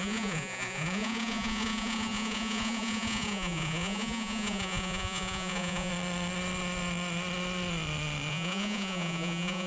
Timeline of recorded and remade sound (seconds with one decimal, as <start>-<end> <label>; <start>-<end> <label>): 0.0-5.9 remade; 5.9-8.3 recorded; 8.3-9.7 remade